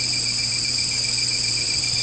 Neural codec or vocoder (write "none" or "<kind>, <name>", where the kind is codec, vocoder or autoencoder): vocoder, BigVGAN v2